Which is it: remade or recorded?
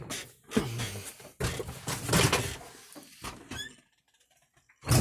recorded